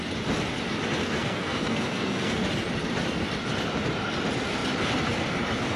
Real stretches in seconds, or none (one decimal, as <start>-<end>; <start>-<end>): 0.0-1.0; 2.4-5.8